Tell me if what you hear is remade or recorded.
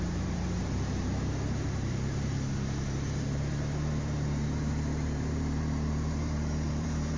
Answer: remade